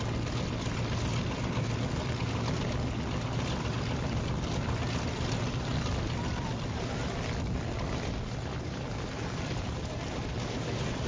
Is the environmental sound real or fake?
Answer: real